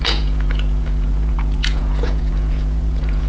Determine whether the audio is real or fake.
fake